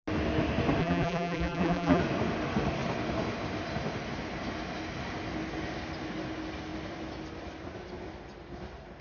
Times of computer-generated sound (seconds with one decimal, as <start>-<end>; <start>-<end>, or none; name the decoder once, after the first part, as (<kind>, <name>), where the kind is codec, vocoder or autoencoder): 0.8-2.0 (vocoder, BigVGAN v2)